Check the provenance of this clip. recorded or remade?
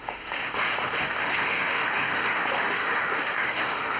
remade